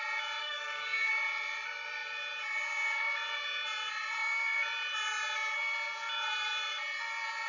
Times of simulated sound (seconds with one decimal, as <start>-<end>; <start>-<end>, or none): 0.4-1.1